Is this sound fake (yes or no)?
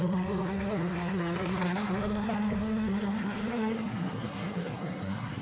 yes